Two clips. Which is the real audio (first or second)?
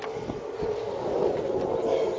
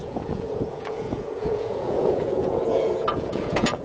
first